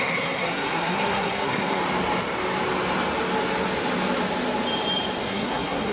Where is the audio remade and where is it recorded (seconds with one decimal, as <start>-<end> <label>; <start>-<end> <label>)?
0.0-1.8 remade; 1.8-5.2 recorded; 5.2-5.9 remade